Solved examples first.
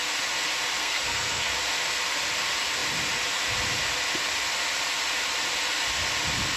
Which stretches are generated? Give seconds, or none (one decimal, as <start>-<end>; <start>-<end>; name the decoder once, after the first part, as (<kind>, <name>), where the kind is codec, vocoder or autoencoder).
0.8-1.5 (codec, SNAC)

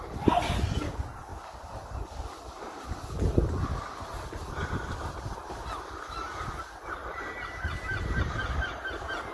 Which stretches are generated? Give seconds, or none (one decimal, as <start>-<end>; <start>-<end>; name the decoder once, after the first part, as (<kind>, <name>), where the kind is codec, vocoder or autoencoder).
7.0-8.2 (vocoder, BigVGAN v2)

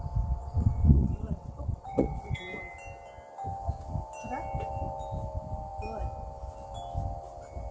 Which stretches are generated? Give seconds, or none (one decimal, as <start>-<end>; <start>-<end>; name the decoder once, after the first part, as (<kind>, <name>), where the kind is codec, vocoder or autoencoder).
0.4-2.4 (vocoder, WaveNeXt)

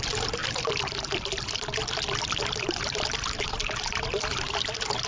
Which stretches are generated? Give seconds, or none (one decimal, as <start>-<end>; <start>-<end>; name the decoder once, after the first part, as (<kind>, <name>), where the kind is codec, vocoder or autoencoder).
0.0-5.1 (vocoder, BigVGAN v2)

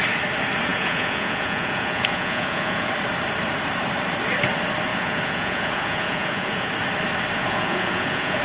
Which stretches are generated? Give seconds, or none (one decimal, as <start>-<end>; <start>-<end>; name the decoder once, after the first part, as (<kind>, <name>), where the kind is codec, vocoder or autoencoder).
0.7-2.9 (vocoder, Vocos); 4.9-6.7; 7.4-8.4

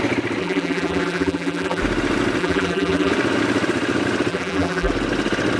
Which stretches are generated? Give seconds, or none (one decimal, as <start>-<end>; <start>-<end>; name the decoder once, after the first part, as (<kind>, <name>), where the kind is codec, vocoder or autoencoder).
0.4-1.8 (vocoder, BigVGAN v2); 2.4-3.1; 4.3-4.9